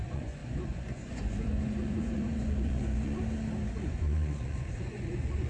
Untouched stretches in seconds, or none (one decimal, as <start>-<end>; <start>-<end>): 3.2-3.7